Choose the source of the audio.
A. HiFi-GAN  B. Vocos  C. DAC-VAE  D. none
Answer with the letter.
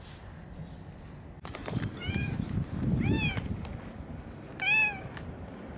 D